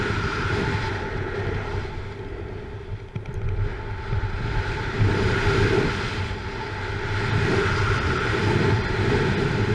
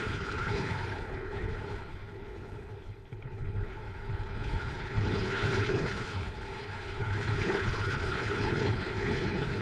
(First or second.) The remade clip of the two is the second